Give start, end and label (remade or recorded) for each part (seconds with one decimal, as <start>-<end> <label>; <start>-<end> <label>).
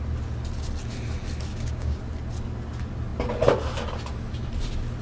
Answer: 0.0-1.5 recorded; 1.5-2.0 remade; 2.0-5.0 recorded